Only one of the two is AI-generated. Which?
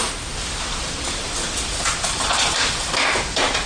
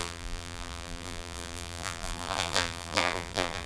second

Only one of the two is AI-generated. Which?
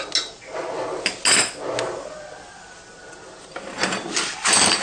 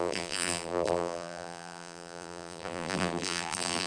second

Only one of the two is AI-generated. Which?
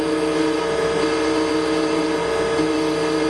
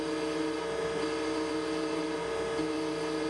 first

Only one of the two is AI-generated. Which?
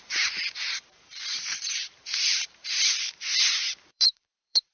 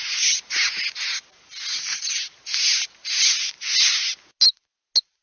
first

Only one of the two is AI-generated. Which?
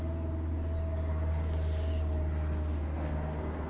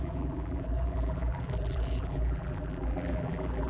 second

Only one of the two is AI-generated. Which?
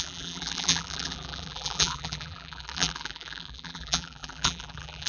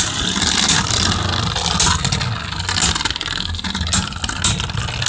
first